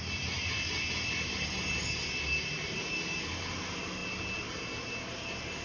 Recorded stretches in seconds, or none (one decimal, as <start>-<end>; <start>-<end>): 0.0-5.6